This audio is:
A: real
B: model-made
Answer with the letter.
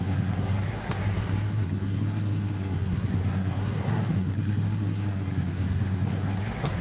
B